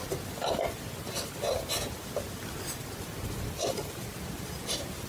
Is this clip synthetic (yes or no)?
no